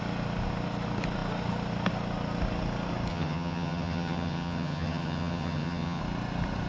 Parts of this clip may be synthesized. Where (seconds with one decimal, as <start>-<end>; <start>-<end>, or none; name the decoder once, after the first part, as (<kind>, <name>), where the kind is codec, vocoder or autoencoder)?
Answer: 3.1-6.0 (vocoder, HiFi-GAN)